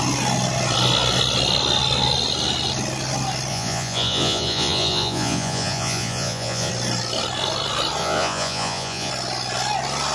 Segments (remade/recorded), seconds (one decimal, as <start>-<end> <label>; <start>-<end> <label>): 0.0-3.5 recorded; 3.5-6.7 remade; 6.7-8.0 recorded; 8.0-9.1 remade; 9.1-10.1 recorded